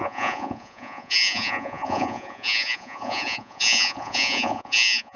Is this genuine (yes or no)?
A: no